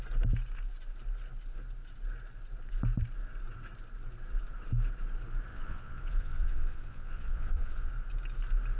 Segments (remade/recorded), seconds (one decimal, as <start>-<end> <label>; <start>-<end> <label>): 0.0-5.5 recorded; 5.5-7.9 remade; 7.9-8.8 recorded